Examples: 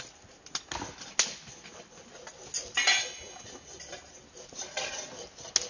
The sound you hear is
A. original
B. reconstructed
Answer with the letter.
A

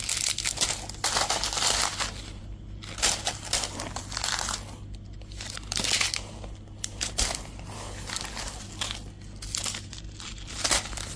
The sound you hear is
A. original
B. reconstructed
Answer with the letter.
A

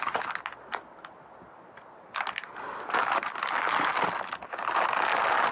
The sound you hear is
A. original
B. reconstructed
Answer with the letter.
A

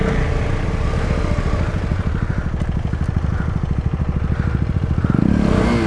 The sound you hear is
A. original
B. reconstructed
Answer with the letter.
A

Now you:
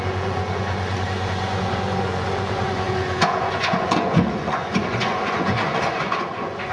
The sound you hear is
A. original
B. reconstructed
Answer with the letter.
B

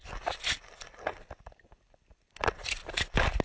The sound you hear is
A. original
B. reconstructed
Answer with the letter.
A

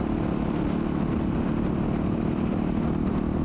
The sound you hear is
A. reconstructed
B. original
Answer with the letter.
B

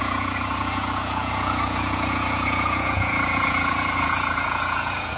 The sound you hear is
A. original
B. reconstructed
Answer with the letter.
B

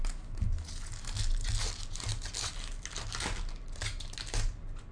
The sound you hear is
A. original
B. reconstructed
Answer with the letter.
A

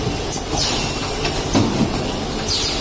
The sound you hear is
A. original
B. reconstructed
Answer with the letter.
A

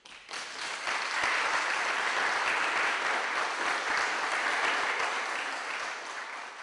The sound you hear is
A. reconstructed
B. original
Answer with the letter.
B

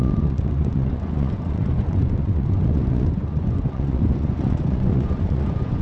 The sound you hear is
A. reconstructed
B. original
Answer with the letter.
A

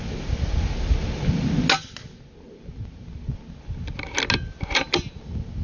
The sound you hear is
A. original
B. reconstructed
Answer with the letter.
A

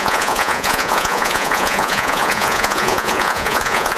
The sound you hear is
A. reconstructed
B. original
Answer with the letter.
A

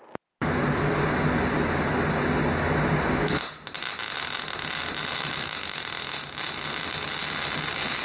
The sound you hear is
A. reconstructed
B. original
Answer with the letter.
B